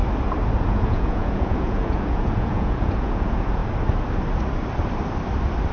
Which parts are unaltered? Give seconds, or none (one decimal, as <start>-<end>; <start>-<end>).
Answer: 0.0-0.6; 3.6-5.7